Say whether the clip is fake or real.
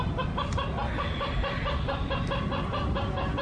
real